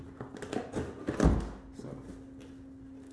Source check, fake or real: real